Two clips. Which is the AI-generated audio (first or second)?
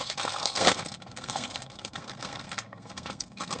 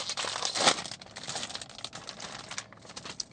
first